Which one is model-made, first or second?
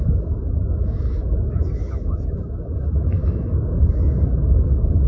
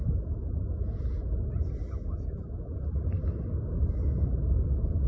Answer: first